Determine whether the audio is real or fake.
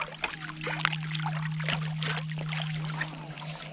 real